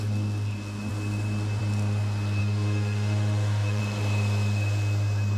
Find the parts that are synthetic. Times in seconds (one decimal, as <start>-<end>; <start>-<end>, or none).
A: 2.4-3.8